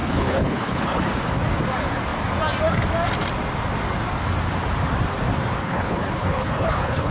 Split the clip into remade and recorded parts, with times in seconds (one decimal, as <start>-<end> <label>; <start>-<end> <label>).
0.0-1.0 remade; 1.0-5.6 recorded; 5.6-7.1 remade